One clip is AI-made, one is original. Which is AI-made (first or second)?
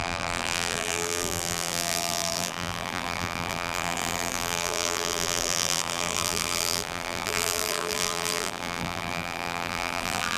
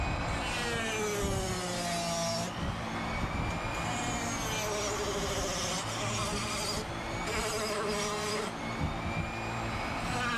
first